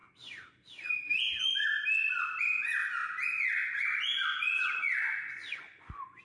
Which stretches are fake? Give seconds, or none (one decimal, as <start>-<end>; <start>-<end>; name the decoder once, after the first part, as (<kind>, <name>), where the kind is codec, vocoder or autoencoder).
3.0-6.2 (vocoder, Vocos)